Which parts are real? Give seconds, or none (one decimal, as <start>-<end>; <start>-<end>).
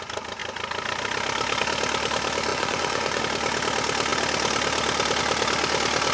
0.0-2.5; 3.2-6.1